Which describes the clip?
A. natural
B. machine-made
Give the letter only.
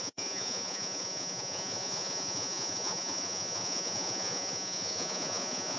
B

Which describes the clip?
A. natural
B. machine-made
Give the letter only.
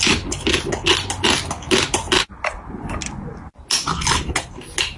A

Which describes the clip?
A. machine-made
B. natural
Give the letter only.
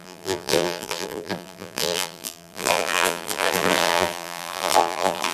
A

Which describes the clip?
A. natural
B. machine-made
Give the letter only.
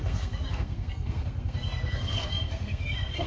B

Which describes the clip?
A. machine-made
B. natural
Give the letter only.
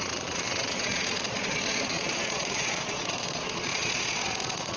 A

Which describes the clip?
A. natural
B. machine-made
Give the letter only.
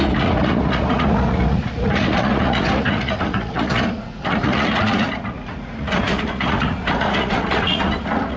B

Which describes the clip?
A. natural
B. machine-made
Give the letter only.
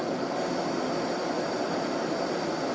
A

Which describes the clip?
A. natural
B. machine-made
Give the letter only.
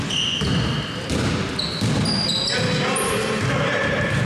A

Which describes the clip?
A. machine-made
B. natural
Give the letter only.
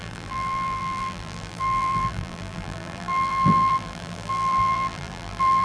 A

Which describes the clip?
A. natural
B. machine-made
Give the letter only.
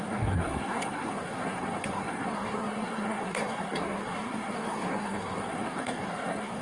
B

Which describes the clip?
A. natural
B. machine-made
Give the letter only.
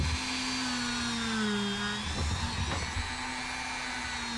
A